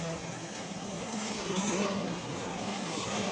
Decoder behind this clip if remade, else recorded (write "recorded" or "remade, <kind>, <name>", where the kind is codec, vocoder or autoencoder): remade, codec, SNAC